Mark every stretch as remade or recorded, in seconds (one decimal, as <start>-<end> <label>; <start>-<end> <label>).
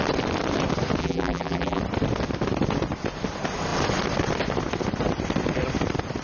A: 0.0-1.0 recorded; 1.0-1.8 remade; 1.8-6.2 recorded